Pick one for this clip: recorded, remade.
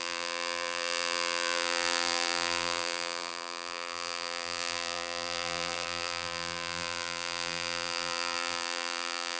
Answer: remade